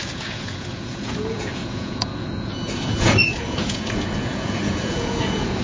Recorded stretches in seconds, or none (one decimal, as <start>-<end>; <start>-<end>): none